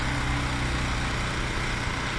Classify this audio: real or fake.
real